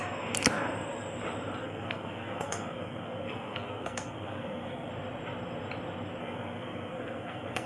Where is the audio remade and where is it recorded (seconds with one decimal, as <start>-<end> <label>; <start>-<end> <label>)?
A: 0.0-1.6 recorded; 1.6-4.9 remade; 4.9-6.2 recorded; 6.2-7.7 remade